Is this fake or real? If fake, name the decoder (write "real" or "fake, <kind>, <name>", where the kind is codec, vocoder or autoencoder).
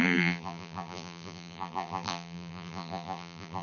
fake, vocoder, BigVGAN v2